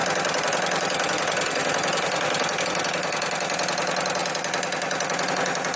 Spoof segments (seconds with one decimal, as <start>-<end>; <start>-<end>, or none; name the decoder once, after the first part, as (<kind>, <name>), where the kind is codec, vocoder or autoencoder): none